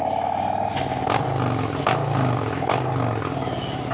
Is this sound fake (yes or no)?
no